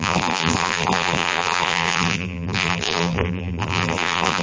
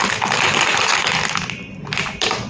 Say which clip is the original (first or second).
second